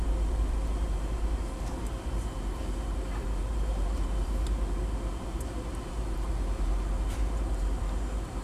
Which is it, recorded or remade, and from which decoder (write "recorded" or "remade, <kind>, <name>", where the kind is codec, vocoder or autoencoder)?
remade, vocoder, BigVGAN v2